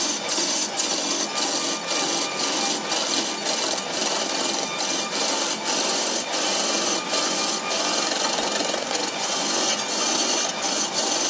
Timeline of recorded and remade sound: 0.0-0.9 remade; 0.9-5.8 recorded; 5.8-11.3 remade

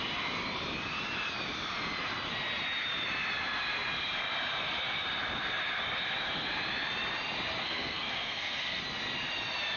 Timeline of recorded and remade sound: 0.0-7.6 recorded; 7.6-8.8 remade; 8.8-9.8 recorded

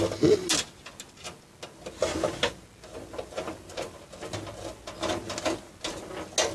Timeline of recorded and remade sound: 0.0-6.5 recorded

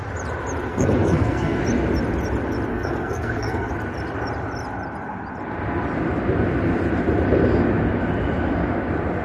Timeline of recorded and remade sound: 0.0-0.7 recorded; 0.7-1.6 remade; 1.6-2.7 recorded; 2.7-3.7 remade; 3.7-9.2 recorded

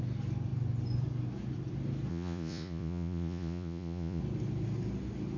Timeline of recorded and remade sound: 0.0-2.1 recorded; 2.1-4.2 remade; 4.2-5.4 recorded